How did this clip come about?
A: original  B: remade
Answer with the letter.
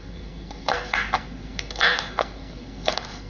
B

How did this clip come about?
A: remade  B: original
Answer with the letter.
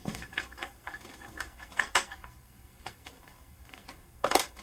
A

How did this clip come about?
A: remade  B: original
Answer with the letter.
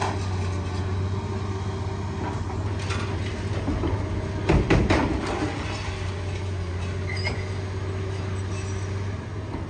B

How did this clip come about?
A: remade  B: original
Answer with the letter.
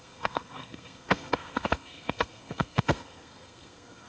A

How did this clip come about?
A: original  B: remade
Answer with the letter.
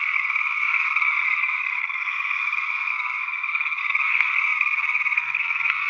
B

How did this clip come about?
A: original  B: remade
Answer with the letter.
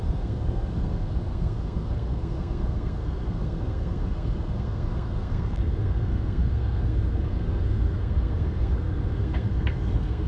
B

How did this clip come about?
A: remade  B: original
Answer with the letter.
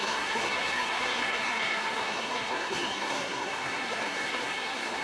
A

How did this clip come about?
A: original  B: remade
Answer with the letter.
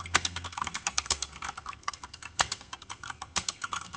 B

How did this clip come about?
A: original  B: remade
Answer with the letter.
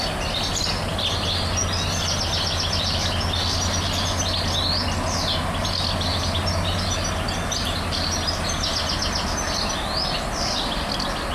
A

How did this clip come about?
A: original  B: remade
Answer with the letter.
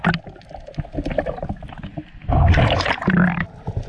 A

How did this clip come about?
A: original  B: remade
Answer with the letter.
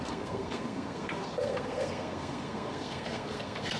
B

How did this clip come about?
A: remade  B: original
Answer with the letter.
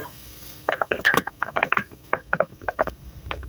A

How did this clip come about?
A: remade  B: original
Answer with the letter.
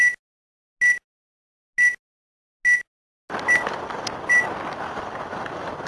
B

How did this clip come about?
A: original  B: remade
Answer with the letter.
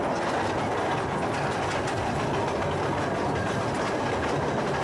A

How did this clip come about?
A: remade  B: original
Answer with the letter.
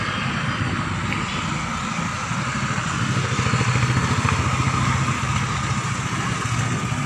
B